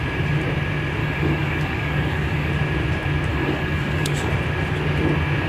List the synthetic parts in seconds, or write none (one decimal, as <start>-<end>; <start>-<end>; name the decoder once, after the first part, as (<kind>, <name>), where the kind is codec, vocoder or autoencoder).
1.0-2.5 (codec, DAC); 3.3-4.3